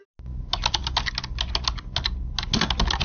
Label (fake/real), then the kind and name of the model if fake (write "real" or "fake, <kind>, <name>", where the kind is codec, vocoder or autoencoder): real